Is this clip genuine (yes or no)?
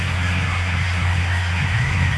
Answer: no